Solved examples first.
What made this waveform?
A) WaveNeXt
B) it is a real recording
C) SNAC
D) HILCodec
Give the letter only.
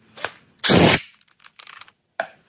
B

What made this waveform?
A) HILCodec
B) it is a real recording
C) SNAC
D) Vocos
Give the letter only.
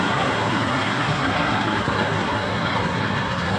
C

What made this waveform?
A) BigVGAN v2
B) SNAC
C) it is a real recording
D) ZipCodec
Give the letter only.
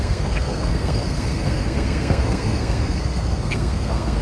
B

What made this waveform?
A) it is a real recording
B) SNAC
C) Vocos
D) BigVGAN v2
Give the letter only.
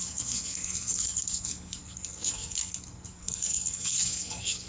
B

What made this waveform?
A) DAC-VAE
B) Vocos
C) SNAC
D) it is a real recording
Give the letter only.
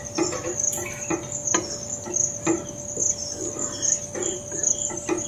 D